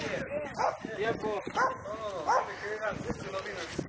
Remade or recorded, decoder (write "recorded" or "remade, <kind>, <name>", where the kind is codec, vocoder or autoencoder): recorded